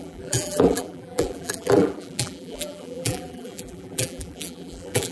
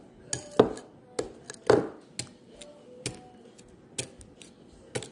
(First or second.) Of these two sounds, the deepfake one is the first